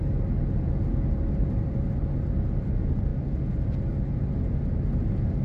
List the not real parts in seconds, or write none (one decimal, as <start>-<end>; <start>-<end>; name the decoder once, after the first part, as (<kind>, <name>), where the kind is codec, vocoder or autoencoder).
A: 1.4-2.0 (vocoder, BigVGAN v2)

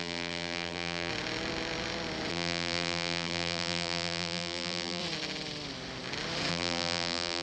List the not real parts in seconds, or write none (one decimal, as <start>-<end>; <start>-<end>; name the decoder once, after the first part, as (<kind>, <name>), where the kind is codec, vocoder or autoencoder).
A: 0.0-1.1 (vocoder, BigVGAN v2); 2.3-5.0; 6.5-7.4

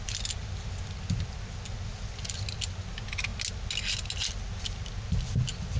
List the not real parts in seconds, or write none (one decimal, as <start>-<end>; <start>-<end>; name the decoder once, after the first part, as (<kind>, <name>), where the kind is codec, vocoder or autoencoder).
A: none

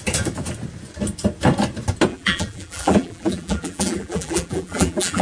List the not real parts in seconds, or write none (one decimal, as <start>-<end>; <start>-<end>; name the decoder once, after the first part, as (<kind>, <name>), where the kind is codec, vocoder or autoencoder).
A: 2.1-5.2 (vocoder, BigVGAN v2)

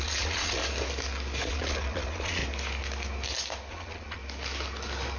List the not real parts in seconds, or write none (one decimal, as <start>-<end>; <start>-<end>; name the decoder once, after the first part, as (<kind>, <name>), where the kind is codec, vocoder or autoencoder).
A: 0.0-0.6 (vocoder, Vocos); 1.5-2.4; 3.7-4.2